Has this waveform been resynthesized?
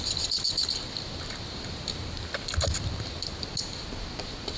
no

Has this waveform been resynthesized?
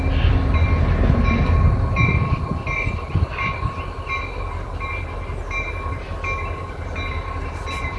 no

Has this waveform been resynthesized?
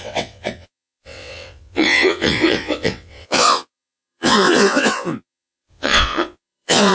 yes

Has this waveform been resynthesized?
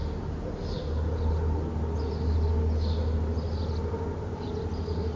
no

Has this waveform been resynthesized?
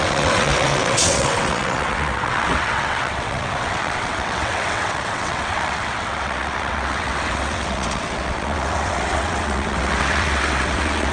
yes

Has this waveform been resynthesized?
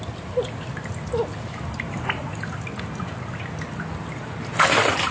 no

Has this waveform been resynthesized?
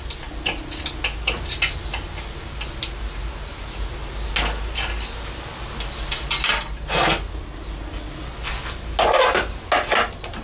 no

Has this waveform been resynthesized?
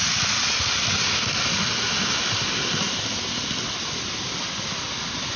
no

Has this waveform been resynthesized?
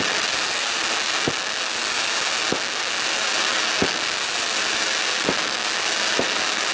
no